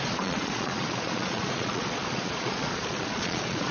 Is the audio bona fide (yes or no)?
no